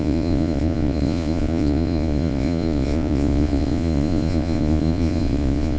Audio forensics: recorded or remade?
remade